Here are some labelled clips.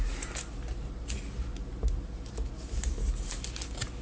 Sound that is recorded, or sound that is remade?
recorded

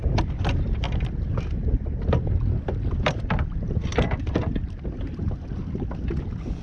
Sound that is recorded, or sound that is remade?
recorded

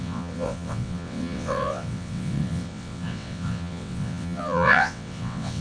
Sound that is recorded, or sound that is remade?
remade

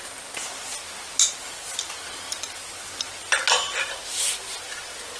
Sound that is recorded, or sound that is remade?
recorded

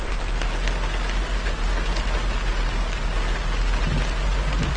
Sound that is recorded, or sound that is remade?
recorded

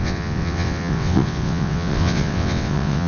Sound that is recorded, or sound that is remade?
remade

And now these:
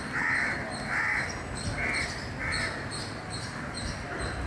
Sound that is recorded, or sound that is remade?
recorded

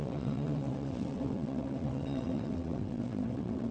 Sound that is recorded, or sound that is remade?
remade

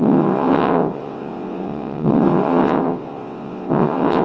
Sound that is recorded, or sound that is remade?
remade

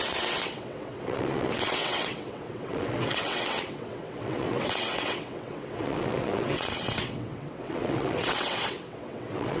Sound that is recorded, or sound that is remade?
remade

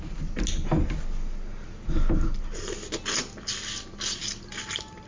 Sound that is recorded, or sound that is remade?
recorded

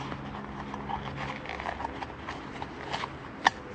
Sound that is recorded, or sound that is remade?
recorded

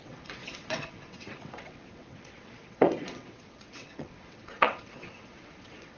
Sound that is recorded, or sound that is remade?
remade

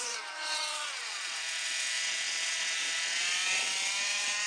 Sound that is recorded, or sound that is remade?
remade